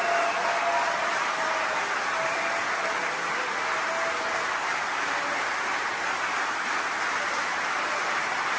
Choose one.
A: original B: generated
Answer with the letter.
A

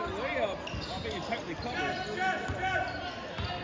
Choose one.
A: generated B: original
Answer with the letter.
B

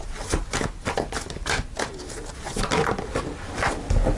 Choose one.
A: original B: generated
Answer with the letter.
A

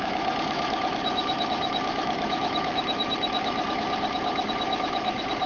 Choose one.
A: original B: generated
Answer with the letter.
B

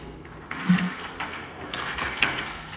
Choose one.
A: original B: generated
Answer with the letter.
B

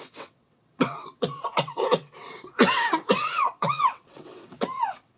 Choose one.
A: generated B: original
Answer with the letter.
A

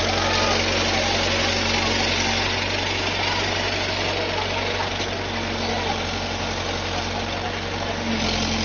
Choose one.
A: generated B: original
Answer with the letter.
B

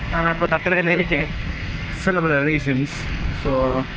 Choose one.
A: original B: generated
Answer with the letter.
B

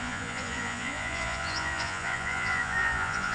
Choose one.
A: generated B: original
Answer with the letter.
A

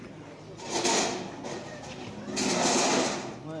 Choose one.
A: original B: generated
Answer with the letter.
A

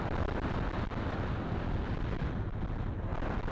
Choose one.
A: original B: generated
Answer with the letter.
A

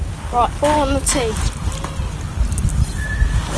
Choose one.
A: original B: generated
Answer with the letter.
A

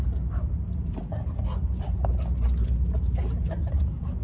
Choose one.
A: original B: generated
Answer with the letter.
A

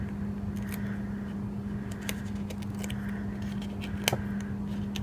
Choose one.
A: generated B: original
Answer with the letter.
B